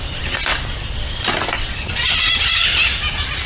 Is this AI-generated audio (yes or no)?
no